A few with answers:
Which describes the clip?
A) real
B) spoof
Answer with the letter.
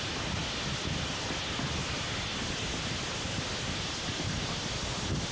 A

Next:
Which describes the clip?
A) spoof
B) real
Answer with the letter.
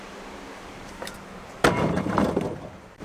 A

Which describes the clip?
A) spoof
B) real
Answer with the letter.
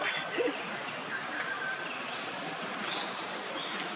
A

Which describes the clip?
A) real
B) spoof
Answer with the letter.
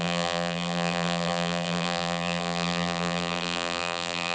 B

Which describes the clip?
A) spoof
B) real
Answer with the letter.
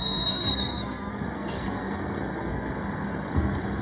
A